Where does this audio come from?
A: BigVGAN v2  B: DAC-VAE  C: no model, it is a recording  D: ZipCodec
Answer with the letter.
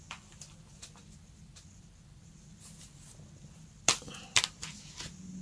C